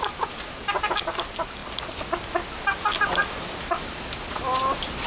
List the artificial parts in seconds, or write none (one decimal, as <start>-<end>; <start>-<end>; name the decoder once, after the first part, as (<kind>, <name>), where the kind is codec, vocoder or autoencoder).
none